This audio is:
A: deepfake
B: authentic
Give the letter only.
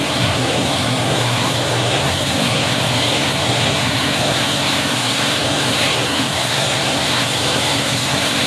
A